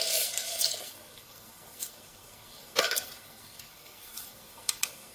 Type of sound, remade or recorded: remade